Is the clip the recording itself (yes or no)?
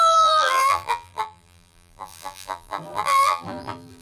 no